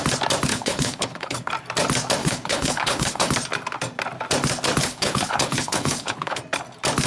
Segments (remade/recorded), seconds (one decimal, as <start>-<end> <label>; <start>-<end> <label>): 0.0-0.5 recorded; 0.5-1.5 remade; 1.5-2.2 recorded; 2.2-3.3 remade; 3.3-4.8 recorded; 4.8-6.4 remade; 6.4-7.1 recorded